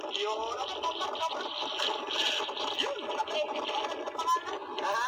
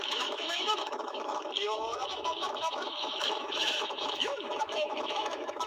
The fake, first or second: second